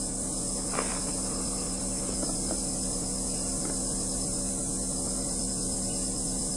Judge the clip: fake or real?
real